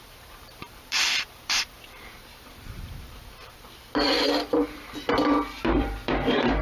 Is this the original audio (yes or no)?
no